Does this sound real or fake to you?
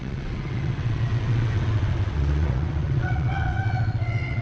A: fake